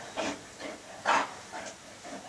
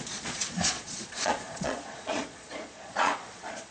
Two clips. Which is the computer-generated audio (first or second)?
second